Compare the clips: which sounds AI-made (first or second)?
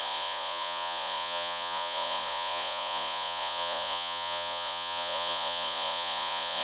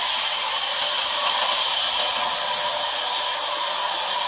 first